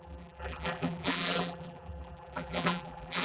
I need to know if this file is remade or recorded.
remade